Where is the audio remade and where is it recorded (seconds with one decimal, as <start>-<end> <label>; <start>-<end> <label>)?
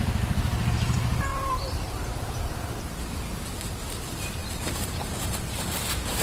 0.0-6.2 remade